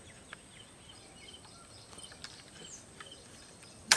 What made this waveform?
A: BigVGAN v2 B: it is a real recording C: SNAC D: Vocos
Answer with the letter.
B